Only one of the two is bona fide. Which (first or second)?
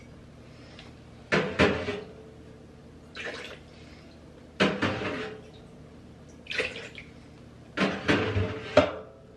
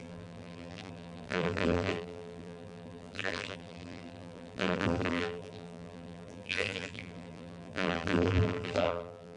first